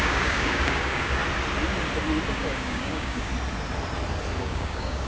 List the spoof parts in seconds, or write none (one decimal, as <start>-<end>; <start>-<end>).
0.0-1.2; 2.3-3.3; 4.4-5.1